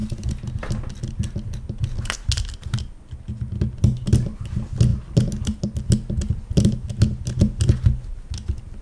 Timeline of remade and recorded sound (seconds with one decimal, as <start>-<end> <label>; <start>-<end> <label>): 0.0-8.8 recorded